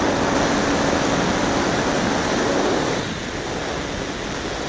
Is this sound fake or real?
real